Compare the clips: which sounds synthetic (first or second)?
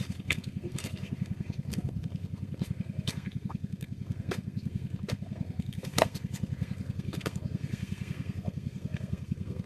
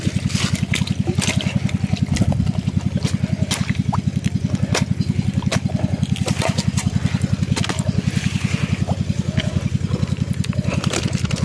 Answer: first